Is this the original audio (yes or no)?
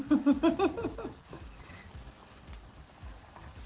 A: yes